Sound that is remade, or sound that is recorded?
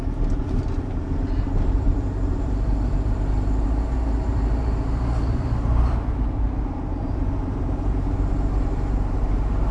remade